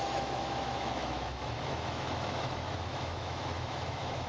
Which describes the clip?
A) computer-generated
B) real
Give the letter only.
A